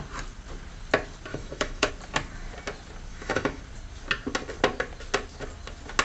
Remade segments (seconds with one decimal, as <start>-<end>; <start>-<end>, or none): 1.3-1.9; 3.1-3.6